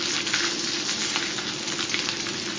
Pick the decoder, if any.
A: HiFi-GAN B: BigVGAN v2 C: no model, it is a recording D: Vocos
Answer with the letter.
C